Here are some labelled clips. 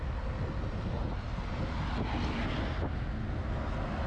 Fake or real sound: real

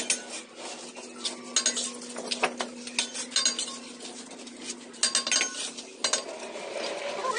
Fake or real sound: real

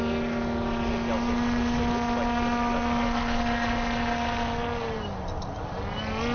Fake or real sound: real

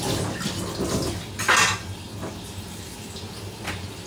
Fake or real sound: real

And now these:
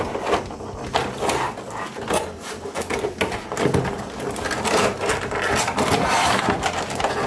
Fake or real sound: real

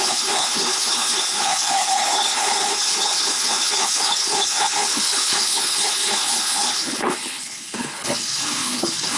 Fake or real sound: fake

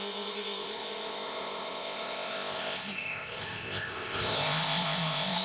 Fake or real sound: fake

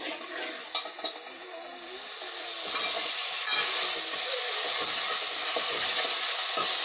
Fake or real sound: real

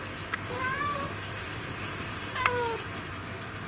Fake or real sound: fake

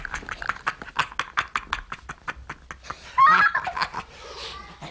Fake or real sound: real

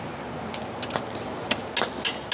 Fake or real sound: real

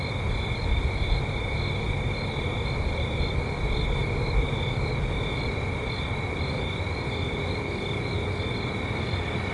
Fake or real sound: real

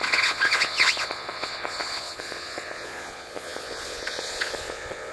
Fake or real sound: fake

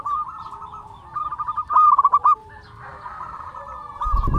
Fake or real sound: real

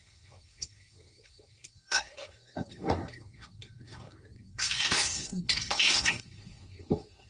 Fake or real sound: fake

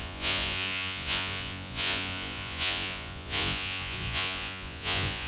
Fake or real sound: fake